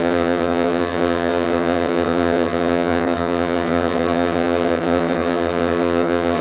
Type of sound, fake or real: fake